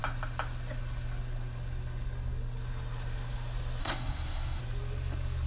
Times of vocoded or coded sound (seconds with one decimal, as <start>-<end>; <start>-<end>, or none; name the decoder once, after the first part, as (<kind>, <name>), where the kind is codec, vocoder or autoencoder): 3.8-4.6 (codec, SNAC)